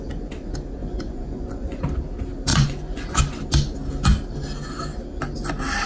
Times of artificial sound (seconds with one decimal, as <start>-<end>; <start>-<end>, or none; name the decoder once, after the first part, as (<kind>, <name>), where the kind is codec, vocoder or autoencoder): 0.8-1.8 (vocoder, Vocos); 2.5-3.2